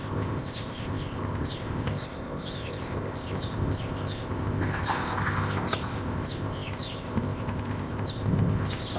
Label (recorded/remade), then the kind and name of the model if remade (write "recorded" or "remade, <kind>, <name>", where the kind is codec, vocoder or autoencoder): remade, codec, ZipCodec